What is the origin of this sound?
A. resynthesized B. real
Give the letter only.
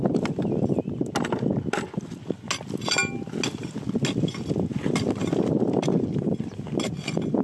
B